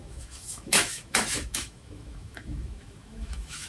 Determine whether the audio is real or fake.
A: fake